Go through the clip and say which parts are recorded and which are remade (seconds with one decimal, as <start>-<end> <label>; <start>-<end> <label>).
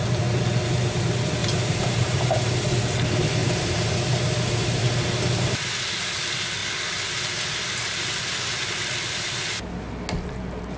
0.0-1.4 recorded; 1.4-2.3 remade; 2.3-3.4 recorded; 3.4-4.8 remade; 4.8-10.8 recorded